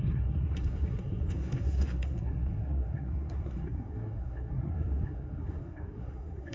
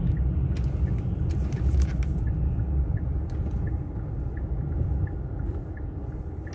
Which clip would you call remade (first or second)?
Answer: first